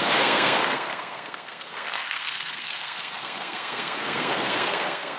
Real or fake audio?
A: fake